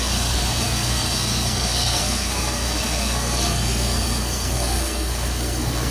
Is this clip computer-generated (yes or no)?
yes